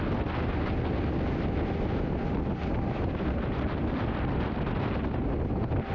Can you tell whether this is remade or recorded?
recorded